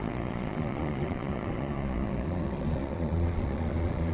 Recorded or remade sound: remade